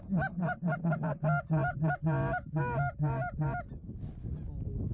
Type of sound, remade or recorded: recorded